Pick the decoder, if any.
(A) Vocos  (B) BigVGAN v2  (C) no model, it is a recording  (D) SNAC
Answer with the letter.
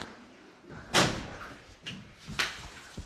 B